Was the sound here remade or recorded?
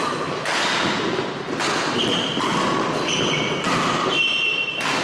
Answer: recorded